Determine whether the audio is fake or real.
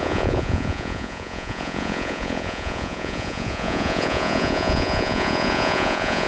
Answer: fake